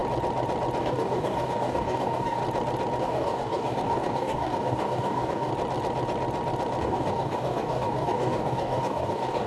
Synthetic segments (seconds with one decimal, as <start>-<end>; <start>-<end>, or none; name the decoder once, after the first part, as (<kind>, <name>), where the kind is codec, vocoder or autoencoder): 0.8-2.4 (codec, DAC); 3.0-5.5; 6.8-9.5